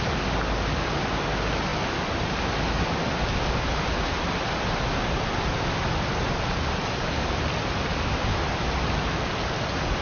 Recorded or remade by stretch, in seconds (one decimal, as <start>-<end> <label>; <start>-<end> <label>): 0.0-10.0 recorded